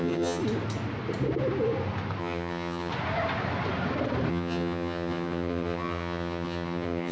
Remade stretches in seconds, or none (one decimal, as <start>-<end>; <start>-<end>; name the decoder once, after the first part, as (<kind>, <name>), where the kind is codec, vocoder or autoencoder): 0.0-0.4 (vocoder, HiFi-GAN); 2.2-2.9; 4.3-7.1